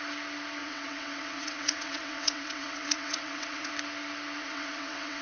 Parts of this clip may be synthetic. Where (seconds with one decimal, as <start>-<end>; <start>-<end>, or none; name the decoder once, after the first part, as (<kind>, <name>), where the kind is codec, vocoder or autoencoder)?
0.6-3.7 (vocoder, WaveNeXt); 4.4-5.2